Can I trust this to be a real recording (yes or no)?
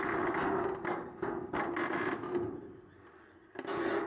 yes